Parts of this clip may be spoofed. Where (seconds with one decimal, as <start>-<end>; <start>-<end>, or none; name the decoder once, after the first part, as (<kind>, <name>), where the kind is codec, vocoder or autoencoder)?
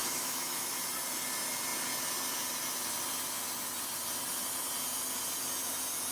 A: 0.0-0.7 (autoencoder, DAC-VAE)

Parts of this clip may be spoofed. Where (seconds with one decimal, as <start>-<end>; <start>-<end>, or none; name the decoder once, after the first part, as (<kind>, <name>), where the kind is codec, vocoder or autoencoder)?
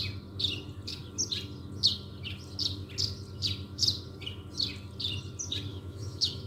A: 5.7-6.5 (autoencoder, DAC-VAE)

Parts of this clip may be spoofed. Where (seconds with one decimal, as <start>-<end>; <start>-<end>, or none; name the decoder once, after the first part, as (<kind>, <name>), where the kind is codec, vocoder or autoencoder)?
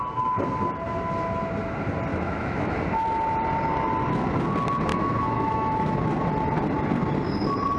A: 2.1-2.8 (autoencoder, DAC-VAE); 4.9-6.0